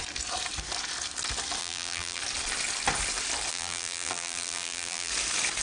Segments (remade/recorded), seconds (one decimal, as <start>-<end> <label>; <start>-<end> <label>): 0.0-1.6 recorded; 1.6-2.2 remade; 2.2-3.5 recorded; 3.5-5.1 remade; 5.1-5.6 recorded